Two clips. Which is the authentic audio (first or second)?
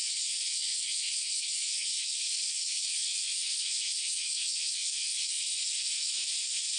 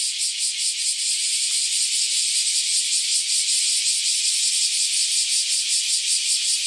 second